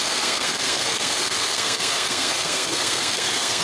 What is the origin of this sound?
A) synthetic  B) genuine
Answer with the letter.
A